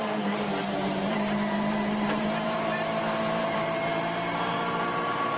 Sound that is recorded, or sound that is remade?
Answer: remade